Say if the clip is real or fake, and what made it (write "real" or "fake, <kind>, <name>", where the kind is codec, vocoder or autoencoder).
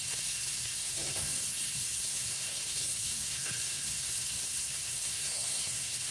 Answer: fake, codec, SNAC